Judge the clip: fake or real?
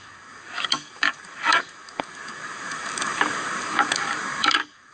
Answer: fake